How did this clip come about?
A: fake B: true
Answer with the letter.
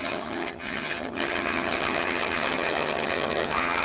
A